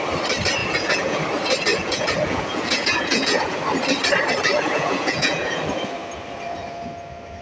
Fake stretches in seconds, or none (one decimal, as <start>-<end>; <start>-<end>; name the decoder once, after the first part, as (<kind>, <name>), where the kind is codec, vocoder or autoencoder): 0.6-1.2 (vocoder, Vocos); 1.7-3.6; 4.5-5.6

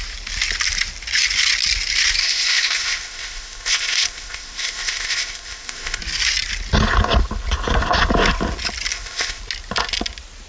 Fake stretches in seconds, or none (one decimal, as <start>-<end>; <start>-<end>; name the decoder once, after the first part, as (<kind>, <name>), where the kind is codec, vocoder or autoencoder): 2.2-6.0 (codec, ZipCodec); 8.9-9.4